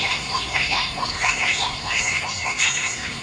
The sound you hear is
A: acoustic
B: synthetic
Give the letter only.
B